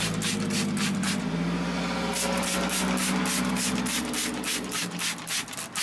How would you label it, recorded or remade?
recorded